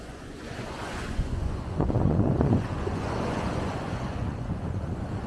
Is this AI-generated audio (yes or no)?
yes